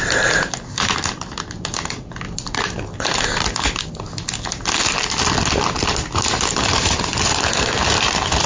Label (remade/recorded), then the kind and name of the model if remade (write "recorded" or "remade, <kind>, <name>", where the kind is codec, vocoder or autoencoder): recorded